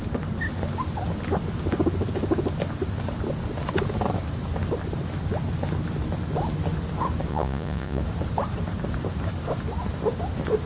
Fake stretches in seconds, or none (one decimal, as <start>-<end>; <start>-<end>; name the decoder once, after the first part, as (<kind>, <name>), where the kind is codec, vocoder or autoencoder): 7.3-8.0 (vocoder, Vocos)